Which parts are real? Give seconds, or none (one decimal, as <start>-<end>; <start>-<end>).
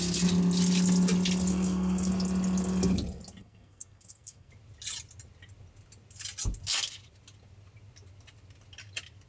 0.0-1.5; 2.1-3.4; 4.5-9.3